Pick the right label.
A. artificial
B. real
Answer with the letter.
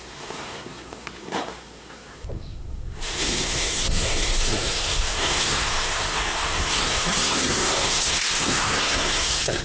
A